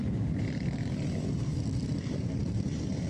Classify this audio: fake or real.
fake